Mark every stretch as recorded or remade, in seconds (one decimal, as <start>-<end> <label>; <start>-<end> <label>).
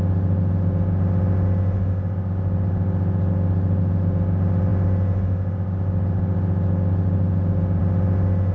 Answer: 0.0-8.5 recorded